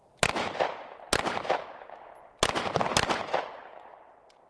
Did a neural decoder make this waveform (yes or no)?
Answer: no